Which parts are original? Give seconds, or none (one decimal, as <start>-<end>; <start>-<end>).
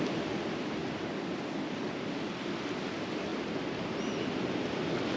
0.0-5.2